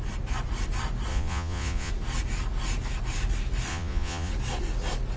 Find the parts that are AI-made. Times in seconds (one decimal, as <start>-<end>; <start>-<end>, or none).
1.1-1.9; 3.7-4.3

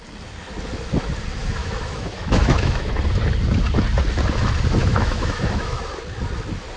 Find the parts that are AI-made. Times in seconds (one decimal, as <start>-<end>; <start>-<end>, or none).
1.6-2.9; 4.8-5.8

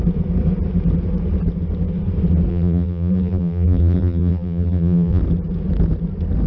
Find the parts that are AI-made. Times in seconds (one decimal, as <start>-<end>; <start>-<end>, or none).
2.5-5.2

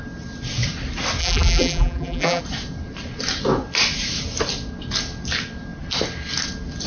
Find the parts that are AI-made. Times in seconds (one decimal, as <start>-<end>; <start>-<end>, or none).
1.2-2.4

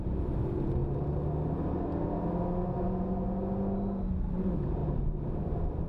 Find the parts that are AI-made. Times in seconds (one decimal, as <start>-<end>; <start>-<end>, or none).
0.0-0.8; 4.3-5.9

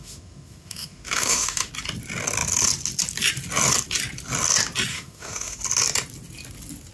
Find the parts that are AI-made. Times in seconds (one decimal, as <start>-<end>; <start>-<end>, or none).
0.0-1.7; 4.9-5.6